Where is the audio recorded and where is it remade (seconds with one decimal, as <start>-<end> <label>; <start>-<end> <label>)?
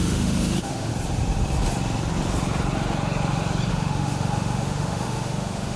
0.0-0.9 remade; 0.9-3.7 recorded; 3.7-5.8 remade